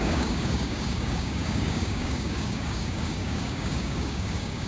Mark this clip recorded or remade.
remade